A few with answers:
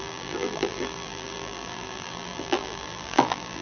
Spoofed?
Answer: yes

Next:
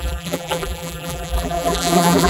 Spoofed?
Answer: yes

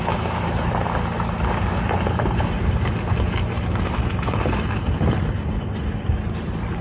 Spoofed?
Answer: no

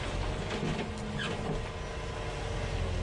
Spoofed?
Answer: no